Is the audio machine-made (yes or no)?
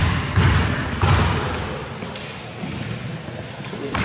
no